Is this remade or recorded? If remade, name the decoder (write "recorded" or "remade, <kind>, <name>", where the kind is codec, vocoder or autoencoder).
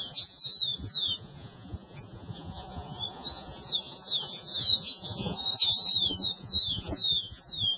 remade, vocoder, Vocos